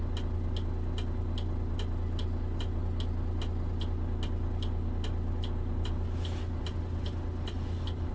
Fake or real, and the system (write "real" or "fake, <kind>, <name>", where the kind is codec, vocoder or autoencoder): real